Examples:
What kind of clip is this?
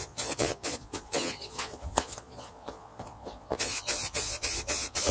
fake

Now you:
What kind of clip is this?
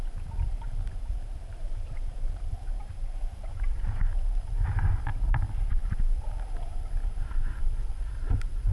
fake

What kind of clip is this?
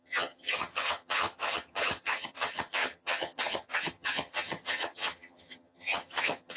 fake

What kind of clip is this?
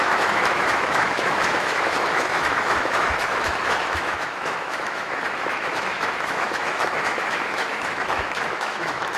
fake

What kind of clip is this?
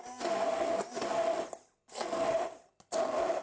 real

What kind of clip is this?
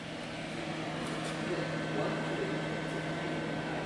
real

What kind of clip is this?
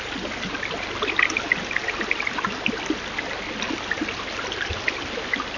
real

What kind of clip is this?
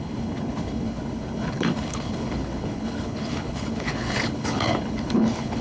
fake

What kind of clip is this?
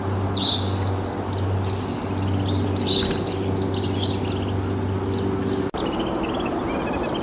real